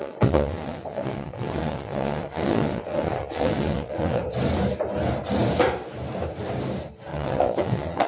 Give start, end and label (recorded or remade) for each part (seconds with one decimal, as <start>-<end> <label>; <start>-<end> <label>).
0.0-4.2 remade; 4.2-7.1 recorded; 7.1-8.1 remade